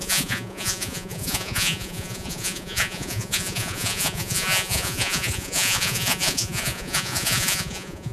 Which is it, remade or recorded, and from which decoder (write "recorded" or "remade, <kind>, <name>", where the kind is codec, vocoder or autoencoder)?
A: remade, vocoder, Vocos